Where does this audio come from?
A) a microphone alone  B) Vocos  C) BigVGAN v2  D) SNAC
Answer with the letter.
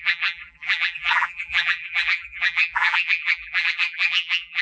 C